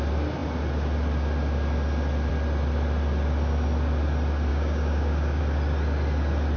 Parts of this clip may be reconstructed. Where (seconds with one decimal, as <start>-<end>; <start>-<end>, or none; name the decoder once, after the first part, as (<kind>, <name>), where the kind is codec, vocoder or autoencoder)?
4.5-5.4 (codec, DAC)